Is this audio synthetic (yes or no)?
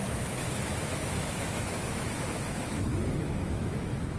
yes